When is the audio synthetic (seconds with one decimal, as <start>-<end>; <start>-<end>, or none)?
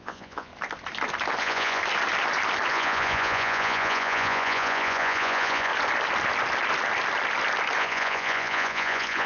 0.0-0.5; 1.4-1.8; 2.7-5.7; 7.8-9.3